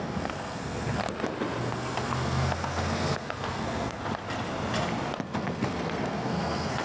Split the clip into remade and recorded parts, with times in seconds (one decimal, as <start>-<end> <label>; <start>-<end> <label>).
0.0-1.0 remade; 1.0-1.6 recorded; 1.6-4.0 remade; 4.0-5.2 recorded; 5.2-6.8 remade